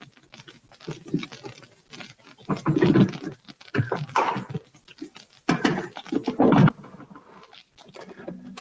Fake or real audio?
real